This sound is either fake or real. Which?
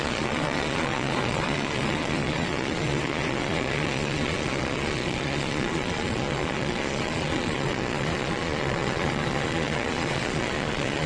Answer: fake